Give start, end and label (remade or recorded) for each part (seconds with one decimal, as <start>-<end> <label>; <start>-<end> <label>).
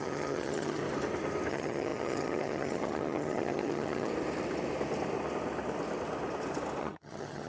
0.0-0.8 remade; 0.8-1.5 recorded; 1.5-4.1 remade; 4.1-6.8 recorded; 6.8-7.5 remade